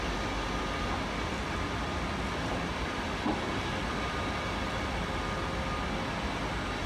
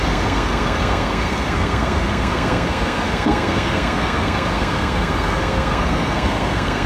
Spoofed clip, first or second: second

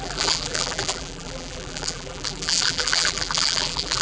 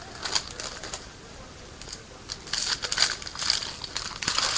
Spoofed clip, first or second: first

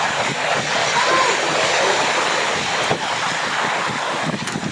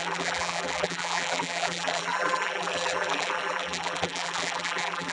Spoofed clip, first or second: second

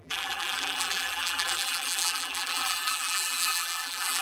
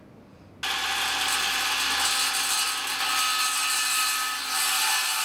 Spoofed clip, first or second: first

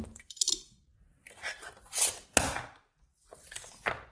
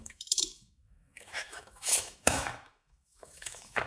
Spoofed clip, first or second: second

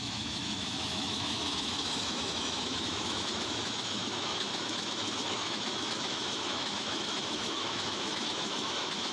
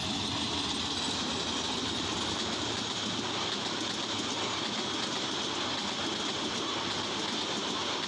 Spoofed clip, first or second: first